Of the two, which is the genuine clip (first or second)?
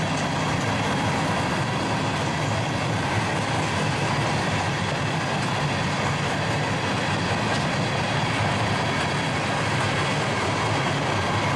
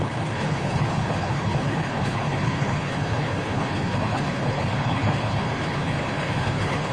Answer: first